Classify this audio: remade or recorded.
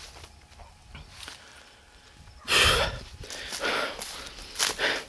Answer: recorded